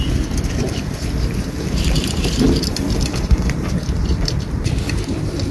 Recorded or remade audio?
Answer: remade